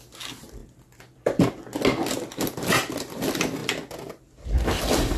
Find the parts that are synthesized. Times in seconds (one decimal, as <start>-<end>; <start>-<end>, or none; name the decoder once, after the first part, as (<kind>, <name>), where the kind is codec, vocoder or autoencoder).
none